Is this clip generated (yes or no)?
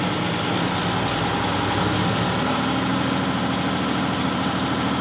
no